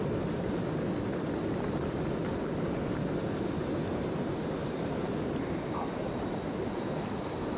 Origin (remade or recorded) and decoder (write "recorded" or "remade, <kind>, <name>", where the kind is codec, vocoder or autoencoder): recorded